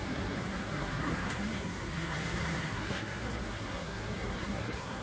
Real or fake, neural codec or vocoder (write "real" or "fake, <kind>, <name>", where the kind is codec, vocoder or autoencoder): fake, codec, SNAC